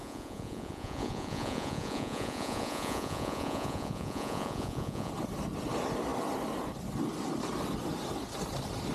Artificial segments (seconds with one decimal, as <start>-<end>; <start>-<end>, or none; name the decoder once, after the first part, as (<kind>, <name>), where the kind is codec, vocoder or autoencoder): 0.0-5.1 (vocoder, Vocos)

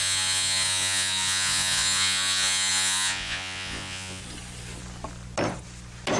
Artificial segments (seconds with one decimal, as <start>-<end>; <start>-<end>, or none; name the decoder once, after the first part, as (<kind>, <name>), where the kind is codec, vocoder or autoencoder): 0.0-4.2 (vocoder, Vocos)